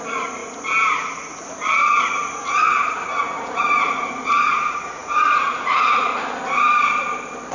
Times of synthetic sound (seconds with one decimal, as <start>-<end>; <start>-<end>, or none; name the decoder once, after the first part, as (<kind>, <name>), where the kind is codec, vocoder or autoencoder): 0.0-6.1 (vocoder, Vocos)

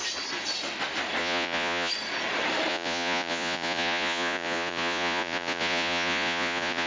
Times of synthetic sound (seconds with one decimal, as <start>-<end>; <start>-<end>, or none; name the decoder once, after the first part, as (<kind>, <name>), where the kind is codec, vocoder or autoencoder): 1.2-1.9 (vocoder, Vocos); 2.7-6.9

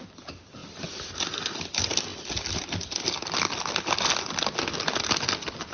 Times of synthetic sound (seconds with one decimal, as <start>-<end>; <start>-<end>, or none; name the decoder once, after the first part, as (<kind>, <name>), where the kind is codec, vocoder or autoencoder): none

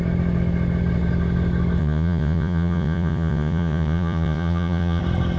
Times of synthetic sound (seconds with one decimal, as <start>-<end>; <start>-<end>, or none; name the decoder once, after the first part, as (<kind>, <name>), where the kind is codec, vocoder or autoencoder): 1.8-5.0 (vocoder, Vocos)

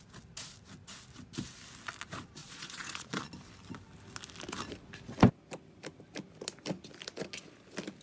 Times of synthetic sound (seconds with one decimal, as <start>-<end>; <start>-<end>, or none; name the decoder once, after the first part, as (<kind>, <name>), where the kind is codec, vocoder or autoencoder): 2.4-3.3 (vocoder, Vocos)